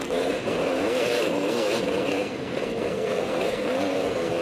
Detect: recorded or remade remade